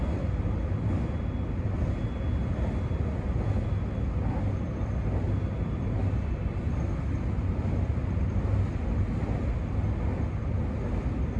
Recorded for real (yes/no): yes